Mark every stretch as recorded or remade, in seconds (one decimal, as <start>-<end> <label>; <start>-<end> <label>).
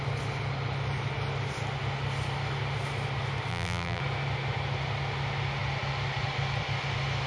0.0-3.5 recorded; 3.5-4.0 remade; 4.0-7.3 recorded